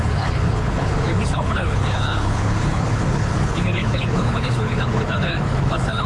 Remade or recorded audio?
remade